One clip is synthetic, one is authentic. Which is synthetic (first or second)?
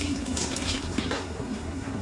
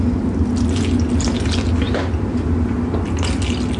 first